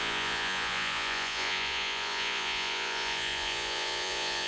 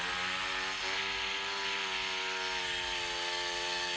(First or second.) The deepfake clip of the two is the first